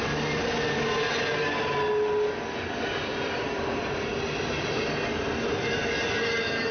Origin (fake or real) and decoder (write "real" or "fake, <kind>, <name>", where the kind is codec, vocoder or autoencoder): real